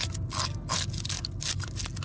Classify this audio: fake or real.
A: real